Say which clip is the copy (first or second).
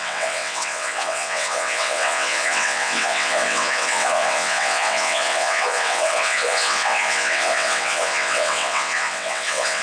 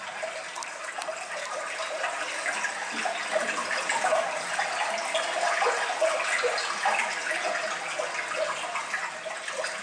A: first